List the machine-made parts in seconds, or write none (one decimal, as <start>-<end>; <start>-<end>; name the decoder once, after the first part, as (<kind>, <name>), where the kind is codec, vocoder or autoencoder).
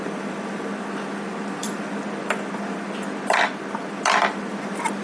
none